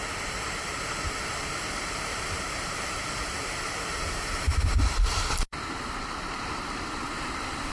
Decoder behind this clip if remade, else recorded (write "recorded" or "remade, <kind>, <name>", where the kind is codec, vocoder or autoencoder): remade, vocoder, BigVGAN v2